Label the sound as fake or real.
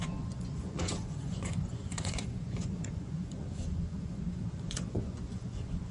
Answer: fake